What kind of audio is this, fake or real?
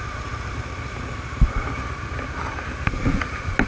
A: real